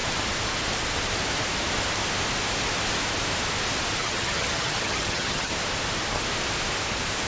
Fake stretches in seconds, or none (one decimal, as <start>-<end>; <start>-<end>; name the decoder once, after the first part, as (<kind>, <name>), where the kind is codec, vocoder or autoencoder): 4.0-5.5 (vocoder, HiFi-GAN)